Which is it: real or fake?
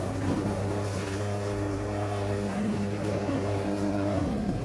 fake